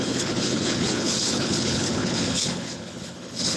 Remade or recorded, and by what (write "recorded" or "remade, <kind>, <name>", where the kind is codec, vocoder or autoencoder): remade, codec, HILCodec